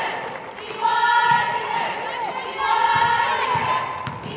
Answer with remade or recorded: recorded